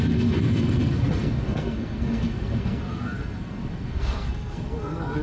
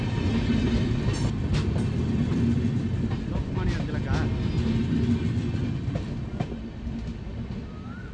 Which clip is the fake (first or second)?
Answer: first